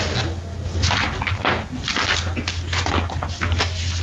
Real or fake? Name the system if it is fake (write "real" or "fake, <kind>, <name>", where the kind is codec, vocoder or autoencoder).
real